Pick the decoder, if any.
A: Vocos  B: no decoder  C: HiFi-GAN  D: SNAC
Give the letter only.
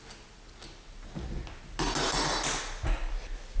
B